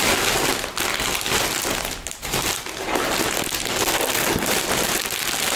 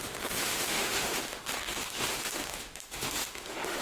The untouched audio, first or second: first